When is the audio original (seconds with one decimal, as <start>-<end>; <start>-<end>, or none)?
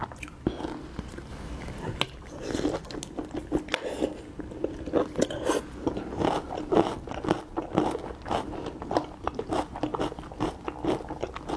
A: 0.0-11.6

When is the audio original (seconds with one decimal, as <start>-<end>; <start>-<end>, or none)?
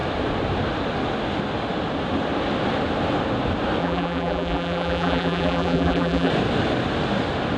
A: 0.0-3.8; 6.3-7.6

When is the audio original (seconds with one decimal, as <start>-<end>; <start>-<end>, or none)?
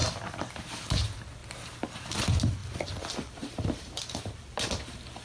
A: 0.5-2.6; 4.2-5.2